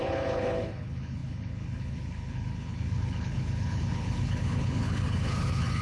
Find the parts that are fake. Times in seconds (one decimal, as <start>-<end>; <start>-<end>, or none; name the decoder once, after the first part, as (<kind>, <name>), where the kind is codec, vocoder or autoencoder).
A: 0.0-5.8 (codec, HILCodec)